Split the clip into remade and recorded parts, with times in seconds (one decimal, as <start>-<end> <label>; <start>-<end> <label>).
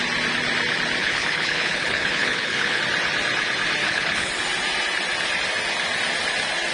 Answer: 0.0-1.0 recorded; 1.0-2.8 remade; 2.8-3.8 recorded; 3.8-4.3 remade; 4.3-6.7 recorded